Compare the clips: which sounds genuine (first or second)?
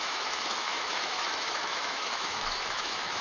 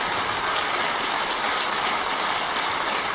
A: second